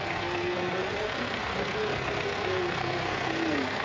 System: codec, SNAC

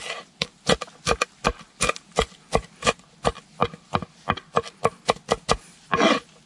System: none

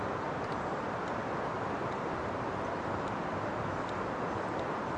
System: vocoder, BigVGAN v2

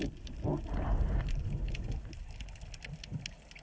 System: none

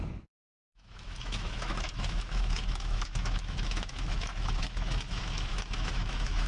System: autoencoder, DAC-VAE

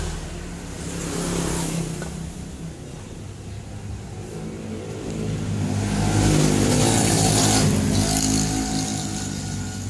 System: none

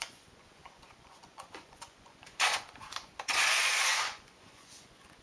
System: vocoder, Vocos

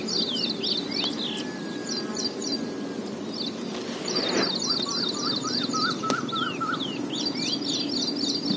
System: none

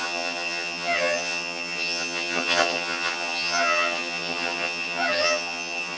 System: vocoder, HiFi-GAN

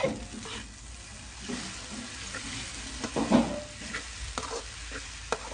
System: none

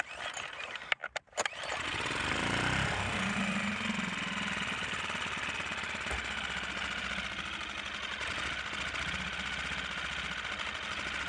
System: none